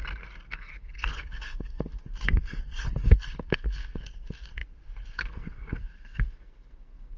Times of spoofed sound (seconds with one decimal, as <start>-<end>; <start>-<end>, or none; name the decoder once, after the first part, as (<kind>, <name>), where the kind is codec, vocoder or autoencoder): 0.5-7.2 (codec, SNAC)